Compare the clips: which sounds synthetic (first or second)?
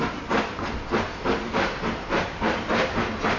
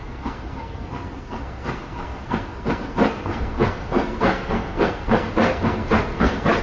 second